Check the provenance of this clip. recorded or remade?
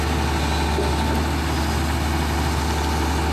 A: recorded